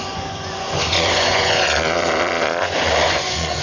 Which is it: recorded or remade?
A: remade